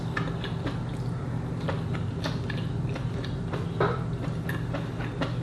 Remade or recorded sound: recorded